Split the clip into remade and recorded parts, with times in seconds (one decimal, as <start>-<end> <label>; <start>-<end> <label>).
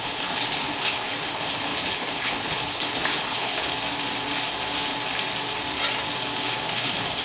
0.0-3.7 remade; 3.7-6.7 recorded; 6.7-7.2 remade